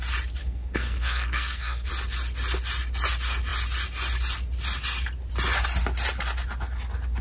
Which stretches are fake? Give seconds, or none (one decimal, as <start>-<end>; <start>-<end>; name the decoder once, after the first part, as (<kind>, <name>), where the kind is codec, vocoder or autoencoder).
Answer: 0.4-1.9 (codec, SNAC)